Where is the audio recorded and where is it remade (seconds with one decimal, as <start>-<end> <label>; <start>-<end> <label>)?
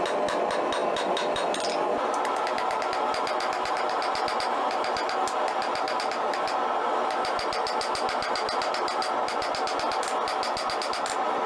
0.0-11.5 recorded